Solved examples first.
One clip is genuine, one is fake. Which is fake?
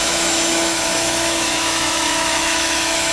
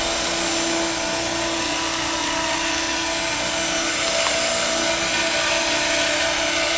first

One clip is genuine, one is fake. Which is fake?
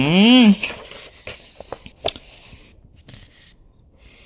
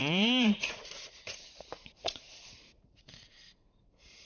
second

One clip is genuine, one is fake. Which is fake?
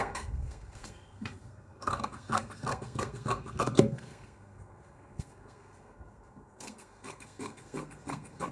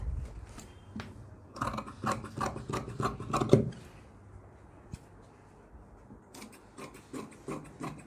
first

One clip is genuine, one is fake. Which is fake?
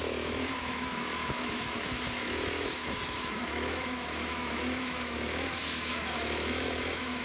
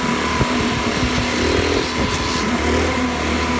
first